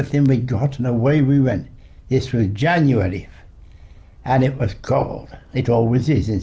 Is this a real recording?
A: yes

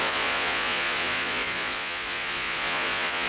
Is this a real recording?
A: no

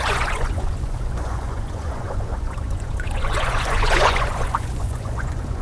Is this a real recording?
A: no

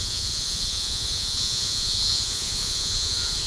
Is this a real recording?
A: no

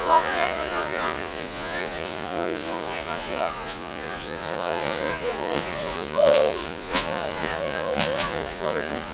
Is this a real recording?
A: no